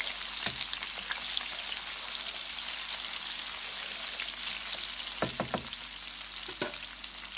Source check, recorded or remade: recorded